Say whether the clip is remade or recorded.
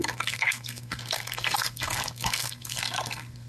remade